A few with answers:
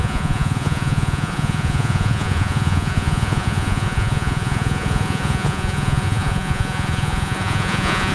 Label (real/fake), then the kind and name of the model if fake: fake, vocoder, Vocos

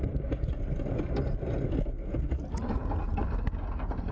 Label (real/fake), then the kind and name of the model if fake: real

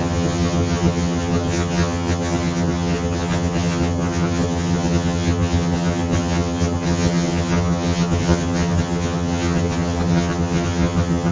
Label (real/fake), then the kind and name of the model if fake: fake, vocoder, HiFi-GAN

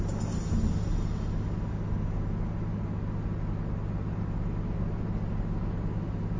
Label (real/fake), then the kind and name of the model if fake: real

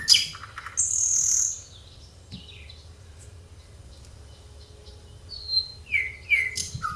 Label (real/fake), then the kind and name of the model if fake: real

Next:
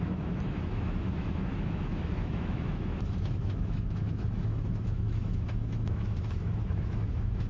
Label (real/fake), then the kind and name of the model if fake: fake, autoencoder, DAC-VAE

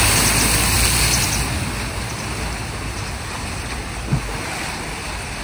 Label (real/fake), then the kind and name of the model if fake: real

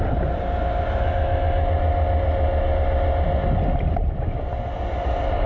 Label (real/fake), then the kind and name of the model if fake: real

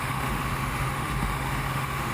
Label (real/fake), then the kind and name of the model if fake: fake, autoencoder, DAC-VAE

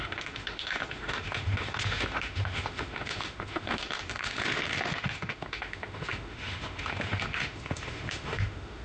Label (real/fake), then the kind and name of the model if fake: fake, autoencoder, DAC-VAE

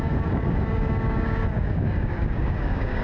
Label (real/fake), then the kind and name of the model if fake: fake, codec, DAC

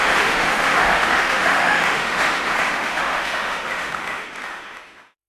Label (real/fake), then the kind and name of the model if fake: fake, autoencoder, DAC-VAE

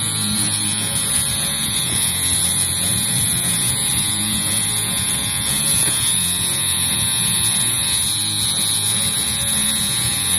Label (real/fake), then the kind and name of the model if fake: fake, vocoder, Vocos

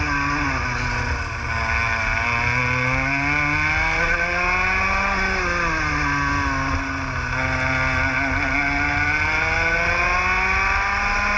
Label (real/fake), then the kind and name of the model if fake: real